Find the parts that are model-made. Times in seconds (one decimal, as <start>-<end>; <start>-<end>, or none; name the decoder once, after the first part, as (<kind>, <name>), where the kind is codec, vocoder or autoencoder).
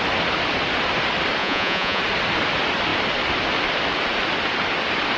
1.4-2.0 (vocoder, Vocos)